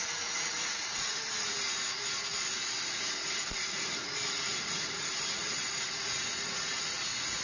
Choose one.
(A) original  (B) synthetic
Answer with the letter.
B